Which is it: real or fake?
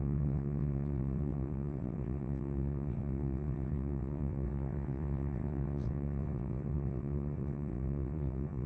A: fake